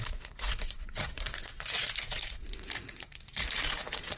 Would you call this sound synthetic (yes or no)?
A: yes